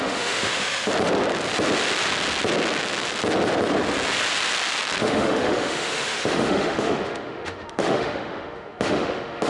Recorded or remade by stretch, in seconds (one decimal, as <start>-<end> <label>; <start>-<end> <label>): 0.0-0.9 remade; 0.9-5.0 recorded; 5.0-9.5 remade